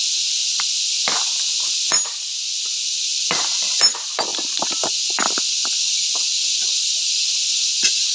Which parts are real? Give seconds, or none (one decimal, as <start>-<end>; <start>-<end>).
0.0-3.1; 3.6-6.3; 7.6-8.1